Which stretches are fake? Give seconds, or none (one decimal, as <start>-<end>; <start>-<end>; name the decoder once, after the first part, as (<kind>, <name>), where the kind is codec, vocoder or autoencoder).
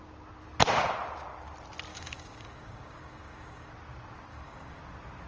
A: 1.9-3.7 (codec, DAC); 4.3-4.8